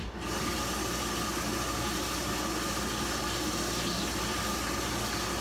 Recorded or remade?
recorded